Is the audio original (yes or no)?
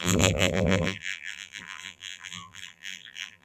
no